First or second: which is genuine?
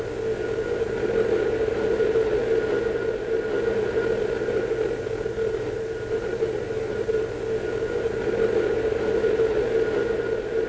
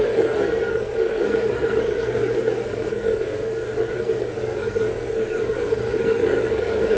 first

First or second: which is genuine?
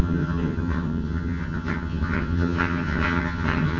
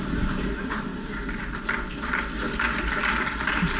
second